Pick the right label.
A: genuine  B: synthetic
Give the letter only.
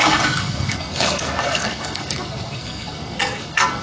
B